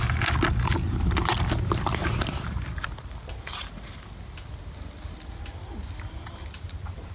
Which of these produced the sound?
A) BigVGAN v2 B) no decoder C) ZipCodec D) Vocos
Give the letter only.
B